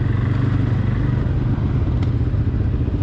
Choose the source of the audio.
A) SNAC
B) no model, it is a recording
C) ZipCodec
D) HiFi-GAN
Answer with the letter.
B